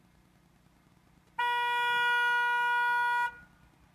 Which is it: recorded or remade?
recorded